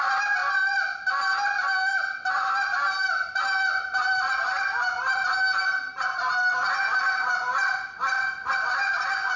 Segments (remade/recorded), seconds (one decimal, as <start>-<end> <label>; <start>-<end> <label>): 0.0-9.4 recorded